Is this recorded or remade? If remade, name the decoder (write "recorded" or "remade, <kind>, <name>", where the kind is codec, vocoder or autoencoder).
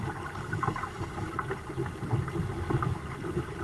recorded